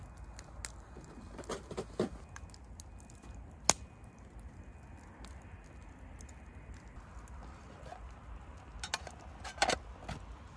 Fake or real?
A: real